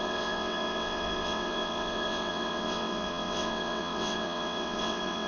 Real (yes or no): no